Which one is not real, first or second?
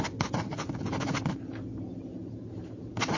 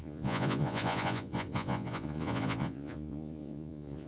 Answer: second